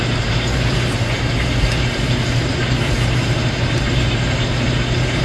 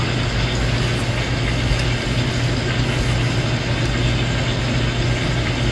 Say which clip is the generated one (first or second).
first